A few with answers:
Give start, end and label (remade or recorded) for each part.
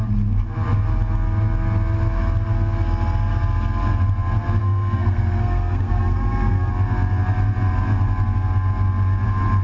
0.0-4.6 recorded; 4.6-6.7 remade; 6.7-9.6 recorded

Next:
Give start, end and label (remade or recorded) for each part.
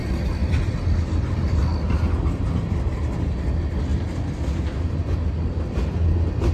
0.0-6.5 recorded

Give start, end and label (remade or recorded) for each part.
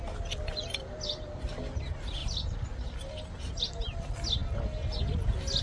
0.0-5.6 recorded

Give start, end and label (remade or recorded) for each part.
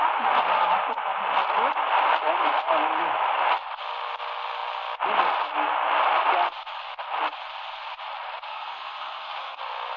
0.0-8.5 recorded; 8.5-9.6 remade; 9.6-10.0 recorded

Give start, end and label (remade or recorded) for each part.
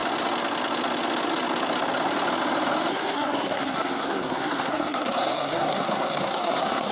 0.0-2.9 recorded; 2.9-6.9 remade